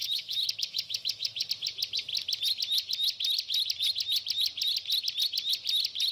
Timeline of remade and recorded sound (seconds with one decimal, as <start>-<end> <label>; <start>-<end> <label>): 0.0-1.5 remade; 1.5-6.1 recorded